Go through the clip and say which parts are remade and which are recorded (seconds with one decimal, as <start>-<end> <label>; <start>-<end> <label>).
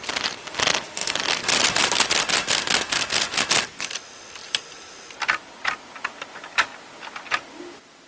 0.0-8.1 recorded